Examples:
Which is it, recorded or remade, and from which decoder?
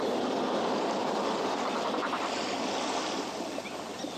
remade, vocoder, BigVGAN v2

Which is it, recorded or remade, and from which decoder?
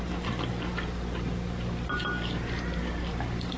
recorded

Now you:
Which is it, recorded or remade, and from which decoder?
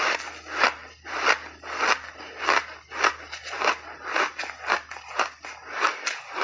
recorded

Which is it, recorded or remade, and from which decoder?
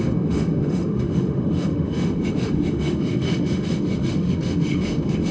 remade, autoencoder, DAC-VAE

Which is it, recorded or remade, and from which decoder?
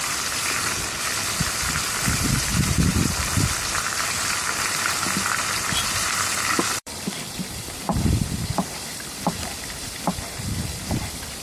remade, vocoder, BigVGAN v2